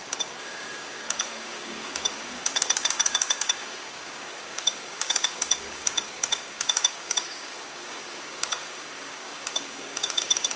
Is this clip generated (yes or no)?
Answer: yes